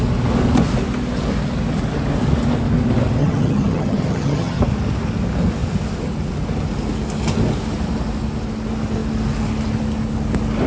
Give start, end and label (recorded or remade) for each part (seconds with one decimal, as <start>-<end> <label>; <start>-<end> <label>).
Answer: 0.0-3.2 recorded; 3.2-4.6 remade; 4.6-10.7 recorded